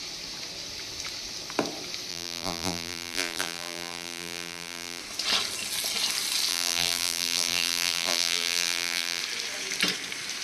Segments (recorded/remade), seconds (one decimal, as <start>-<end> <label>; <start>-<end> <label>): 0.0-2.1 recorded; 2.1-5.0 remade; 5.0-6.5 recorded; 6.5-9.2 remade; 9.2-10.4 recorded